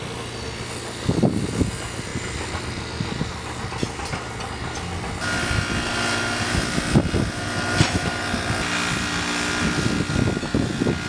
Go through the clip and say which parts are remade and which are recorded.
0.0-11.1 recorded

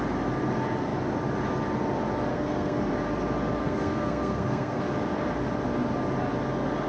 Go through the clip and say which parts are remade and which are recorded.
0.0-2.3 recorded; 2.3-2.9 remade; 2.9-3.6 recorded; 3.6-4.8 remade; 4.8-6.9 recorded

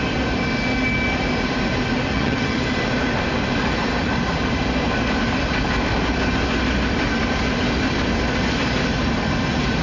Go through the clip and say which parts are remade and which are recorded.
0.0-2.1 recorded; 2.1-2.6 remade; 2.6-9.8 recorded